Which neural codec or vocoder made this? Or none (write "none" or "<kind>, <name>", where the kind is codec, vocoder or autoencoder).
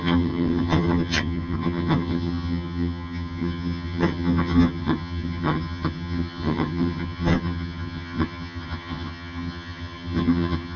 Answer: vocoder, HiFi-GAN